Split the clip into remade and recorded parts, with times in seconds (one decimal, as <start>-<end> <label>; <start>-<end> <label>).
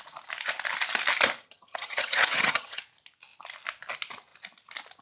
0.0-1.4 recorded; 1.4-2.8 remade; 2.8-5.0 recorded